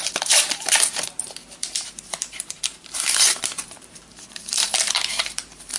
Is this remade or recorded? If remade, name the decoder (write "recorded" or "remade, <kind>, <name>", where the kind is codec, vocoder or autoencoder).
remade, vocoder, BigVGAN v2